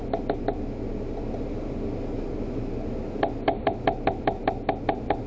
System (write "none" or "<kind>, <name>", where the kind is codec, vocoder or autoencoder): none